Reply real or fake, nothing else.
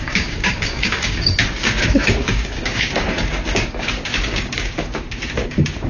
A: fake